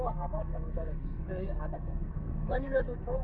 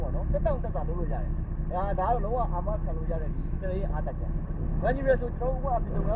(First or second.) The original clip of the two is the second